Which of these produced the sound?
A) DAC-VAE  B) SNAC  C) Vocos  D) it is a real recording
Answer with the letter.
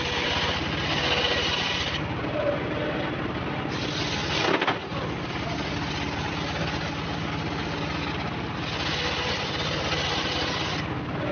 D